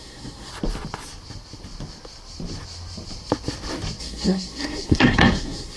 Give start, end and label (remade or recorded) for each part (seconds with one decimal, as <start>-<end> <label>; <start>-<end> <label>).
0.0-0.5 remade; 0.5-4.0 recorded; 4.0-5.8 remade